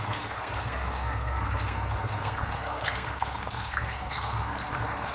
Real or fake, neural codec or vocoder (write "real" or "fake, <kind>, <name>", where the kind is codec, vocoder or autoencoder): fake, codec, SNAC